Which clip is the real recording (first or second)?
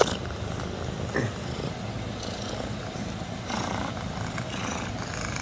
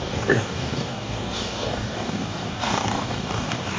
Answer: first